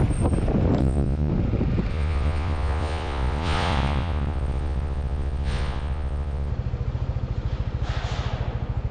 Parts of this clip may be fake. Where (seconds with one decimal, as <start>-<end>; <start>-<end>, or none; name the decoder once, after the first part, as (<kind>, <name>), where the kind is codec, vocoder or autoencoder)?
0.8-1.3 (vocoder, Vocos); 1.9-6.5